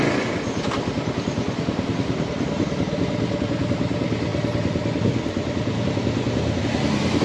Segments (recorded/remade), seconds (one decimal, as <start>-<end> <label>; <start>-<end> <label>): 0.0-7.2 recorded